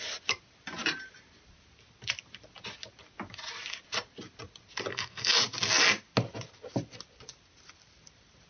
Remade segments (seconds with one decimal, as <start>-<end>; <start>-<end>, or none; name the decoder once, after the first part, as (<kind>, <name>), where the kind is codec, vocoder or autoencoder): 4.9-5.4 (codec, SNAC)